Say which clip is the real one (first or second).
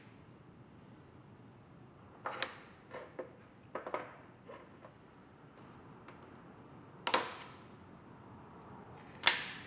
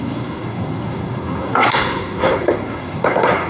first